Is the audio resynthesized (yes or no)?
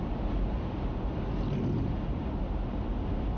no